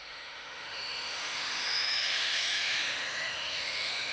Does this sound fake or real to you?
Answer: fake